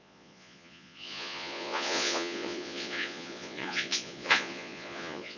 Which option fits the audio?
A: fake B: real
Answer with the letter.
A